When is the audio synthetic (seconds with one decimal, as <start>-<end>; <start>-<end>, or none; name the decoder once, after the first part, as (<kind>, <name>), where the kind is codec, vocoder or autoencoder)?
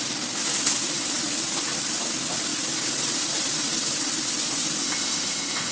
4.8-5.7 (codec, ZipCodec)